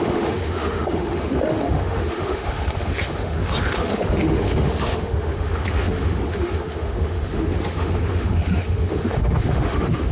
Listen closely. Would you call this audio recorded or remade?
remade